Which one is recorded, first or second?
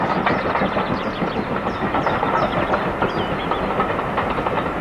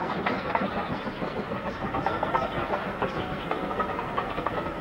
first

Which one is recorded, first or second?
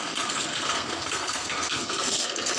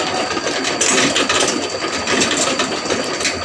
second